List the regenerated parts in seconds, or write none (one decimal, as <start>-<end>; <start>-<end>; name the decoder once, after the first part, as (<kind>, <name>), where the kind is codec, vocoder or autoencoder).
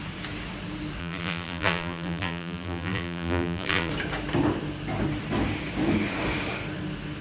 1.0-3.9 (vocoder, BigVGAN v2)